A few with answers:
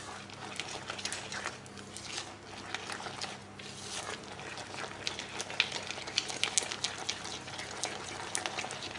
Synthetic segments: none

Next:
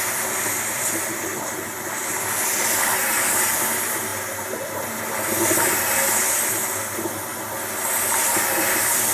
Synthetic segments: none

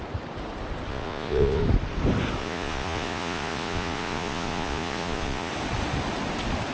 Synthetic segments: 0.9-1.6 (vocoder, Vocos); 2.4-5.5